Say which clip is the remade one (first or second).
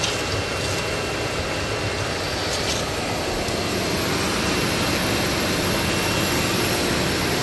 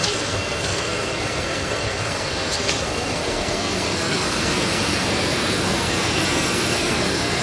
second